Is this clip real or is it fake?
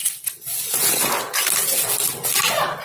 real